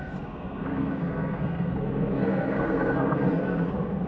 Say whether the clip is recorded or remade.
remade